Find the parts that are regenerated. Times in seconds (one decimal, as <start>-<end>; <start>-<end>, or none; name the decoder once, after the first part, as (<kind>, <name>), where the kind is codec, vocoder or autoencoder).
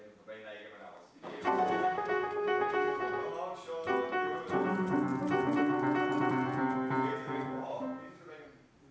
0.8-3.3 (codec, DAC); 7.2-8.3